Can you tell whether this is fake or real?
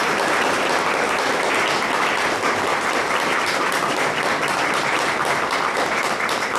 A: real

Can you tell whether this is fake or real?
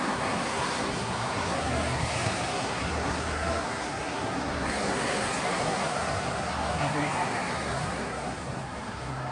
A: fake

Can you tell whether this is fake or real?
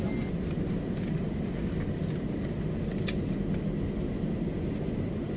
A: real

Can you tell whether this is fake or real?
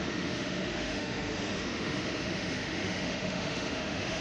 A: fake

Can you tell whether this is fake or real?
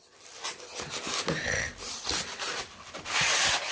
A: real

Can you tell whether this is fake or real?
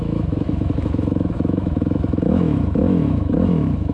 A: fake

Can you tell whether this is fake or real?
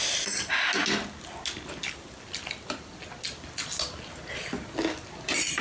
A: real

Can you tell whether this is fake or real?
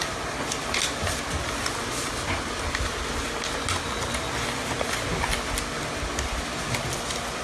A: real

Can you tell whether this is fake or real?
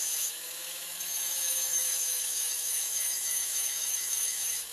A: fake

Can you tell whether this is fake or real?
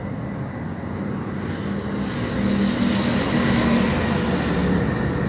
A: real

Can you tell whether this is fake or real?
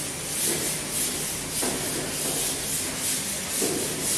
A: real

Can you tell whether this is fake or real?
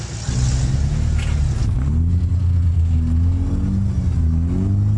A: real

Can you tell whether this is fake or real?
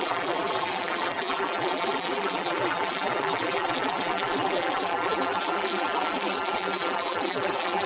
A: fake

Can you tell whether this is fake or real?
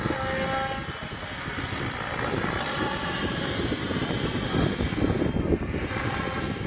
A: fake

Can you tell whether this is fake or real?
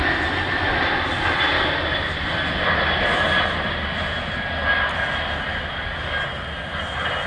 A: real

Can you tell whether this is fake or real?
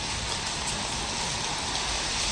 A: real